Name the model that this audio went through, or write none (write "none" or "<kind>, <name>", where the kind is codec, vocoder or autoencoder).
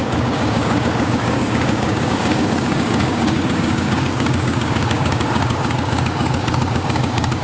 codec, DAC